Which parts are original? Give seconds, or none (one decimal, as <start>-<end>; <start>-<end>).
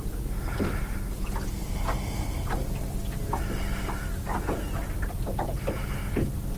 0.0-6.6